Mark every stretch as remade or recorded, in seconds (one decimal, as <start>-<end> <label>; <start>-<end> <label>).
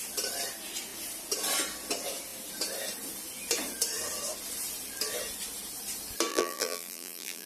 0.0-6.3 recorded; 6.3-7.5 remade